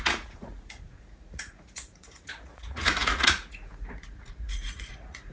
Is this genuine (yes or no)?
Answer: no